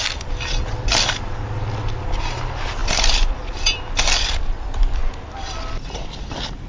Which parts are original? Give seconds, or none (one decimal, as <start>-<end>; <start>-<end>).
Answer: 0.0-6.7